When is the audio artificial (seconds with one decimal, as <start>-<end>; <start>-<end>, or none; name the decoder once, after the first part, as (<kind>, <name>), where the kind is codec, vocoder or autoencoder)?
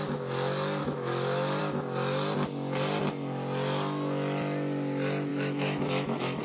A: 0.8-1.6 (autoencoder, DAC-VAE); 5.3-6.4